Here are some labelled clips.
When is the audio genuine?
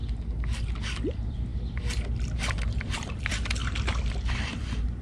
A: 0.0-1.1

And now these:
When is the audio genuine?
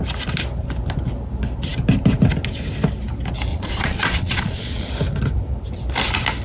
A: 0.0-3.5; 4.9-6.4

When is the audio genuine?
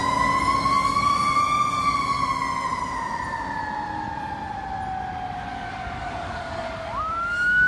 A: 0.0-0.7; 1.4-5.5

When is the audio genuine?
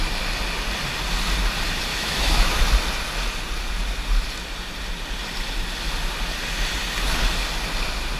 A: 0.0-1.9; 2.6-8.2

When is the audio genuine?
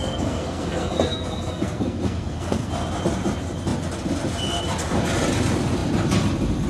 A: 2.7-6.7